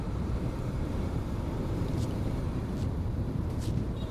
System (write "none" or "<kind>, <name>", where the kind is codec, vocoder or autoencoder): vocoder, BigVGAN v2